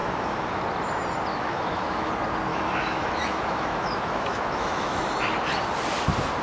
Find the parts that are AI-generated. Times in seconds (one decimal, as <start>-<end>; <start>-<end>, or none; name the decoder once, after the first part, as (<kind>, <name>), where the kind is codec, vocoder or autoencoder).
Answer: 0.0-0.6 (autoencoder, DAC-VAE); 1.3-2.1; 2.5-5.1